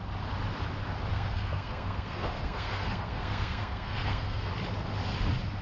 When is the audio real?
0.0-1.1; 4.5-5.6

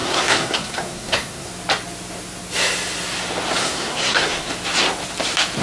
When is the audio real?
1.5-3.6; 4.5-5.6

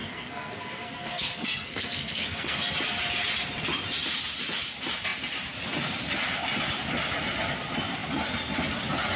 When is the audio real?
2.6-9.2